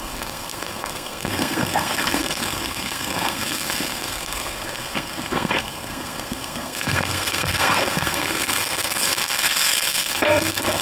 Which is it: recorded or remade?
remade